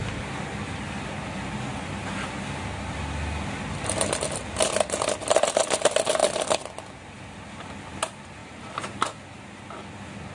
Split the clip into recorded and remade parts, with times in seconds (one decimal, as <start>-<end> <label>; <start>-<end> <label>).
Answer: 0.0-8.4 recorded; 8.4-9.5 remade; 9.5-10.3 recorded